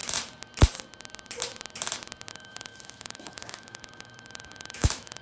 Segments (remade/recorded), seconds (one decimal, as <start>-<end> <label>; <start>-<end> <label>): 0.0-2.3 recorded; 2.3-5.2 remade